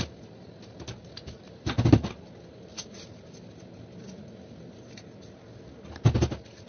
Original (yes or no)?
yes